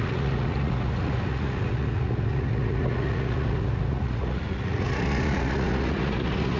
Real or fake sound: fake